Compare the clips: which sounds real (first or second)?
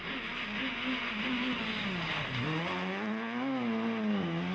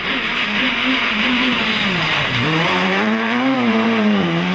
first